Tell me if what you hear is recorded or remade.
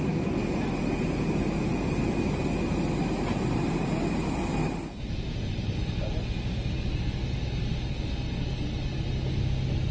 recorded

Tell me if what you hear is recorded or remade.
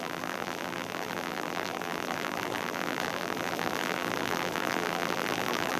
remade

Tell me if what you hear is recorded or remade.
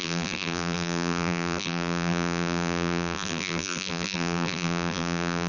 remade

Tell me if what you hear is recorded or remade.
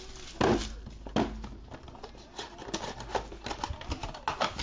recorded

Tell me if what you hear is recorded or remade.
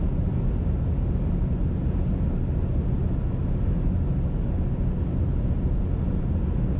recorded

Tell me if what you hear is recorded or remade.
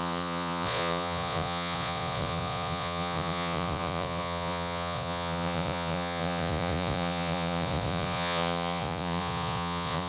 remade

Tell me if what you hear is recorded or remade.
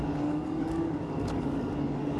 remade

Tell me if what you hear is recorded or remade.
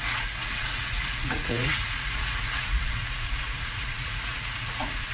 remade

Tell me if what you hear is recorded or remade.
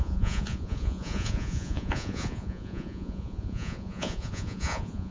remade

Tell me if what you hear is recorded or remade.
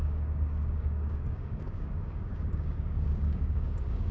remade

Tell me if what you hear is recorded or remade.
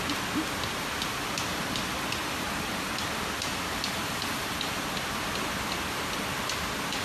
recorded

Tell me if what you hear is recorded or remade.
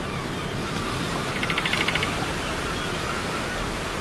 recorded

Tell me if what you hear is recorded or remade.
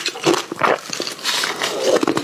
recorded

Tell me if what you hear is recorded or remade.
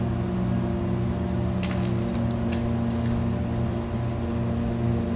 recorded